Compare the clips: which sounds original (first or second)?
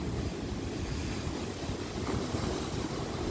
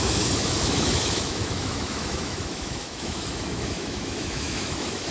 first